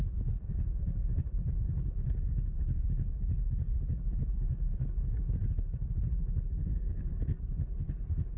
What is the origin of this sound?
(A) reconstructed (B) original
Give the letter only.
B